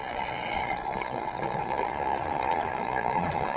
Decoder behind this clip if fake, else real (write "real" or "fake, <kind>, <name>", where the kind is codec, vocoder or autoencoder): fake, vocoder, Vocos